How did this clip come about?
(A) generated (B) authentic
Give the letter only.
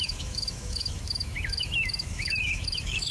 A